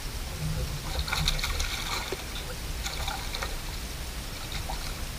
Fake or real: real